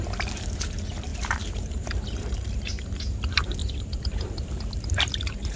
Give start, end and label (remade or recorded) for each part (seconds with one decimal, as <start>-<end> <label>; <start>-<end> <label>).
0.0-3.6 remade; 3.6-4.8 recorded; 4.8-5.6 remade